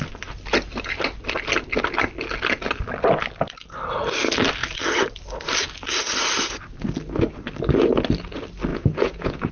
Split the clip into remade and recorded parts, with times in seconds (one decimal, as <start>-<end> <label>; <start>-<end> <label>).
0.0-8.7 recorded; 8.7-9.5 remade